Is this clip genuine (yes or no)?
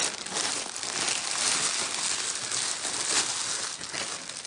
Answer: yes